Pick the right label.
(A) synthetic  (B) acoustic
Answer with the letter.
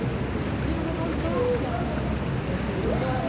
B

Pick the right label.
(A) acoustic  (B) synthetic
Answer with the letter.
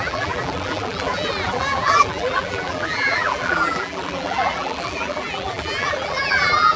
B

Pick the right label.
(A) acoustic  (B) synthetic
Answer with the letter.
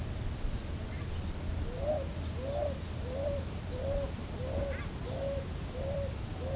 A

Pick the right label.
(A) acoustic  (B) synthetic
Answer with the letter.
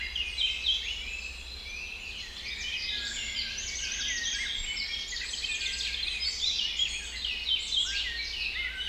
A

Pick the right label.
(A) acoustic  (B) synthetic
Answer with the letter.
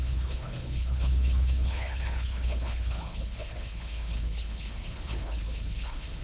B